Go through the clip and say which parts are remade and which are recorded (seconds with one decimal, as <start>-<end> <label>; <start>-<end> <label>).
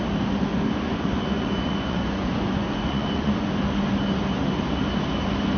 0.0-0.5 recorded; 0.5-3.5 remade; 3.5-5.6 recorded